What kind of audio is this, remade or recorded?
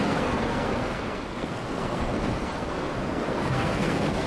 remade